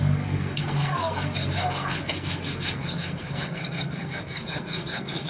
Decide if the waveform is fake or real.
fake